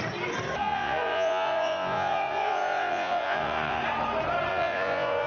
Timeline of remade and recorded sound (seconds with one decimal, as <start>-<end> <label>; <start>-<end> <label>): 0.0-0.6 recorded; 0.6-3.8 remade; 3.8-4.5 recorded; 4.5-5.3 remade